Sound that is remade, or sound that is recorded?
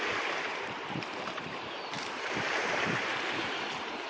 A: remade